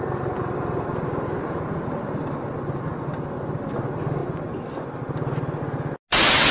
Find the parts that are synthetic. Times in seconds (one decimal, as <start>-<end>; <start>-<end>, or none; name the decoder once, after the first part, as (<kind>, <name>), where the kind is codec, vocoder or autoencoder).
1.4-2.0 (vocoder, Vocos)